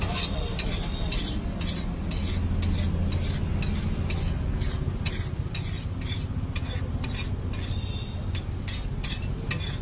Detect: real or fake real